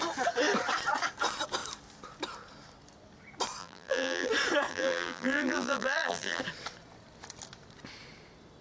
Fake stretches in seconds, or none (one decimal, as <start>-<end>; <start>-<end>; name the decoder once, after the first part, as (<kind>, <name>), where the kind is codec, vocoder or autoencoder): 3.6-4.3 (vocoder, BigVGAN v2); 4.7-6.4